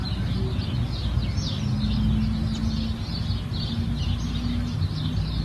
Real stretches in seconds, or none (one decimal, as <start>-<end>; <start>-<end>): 0.0-5.4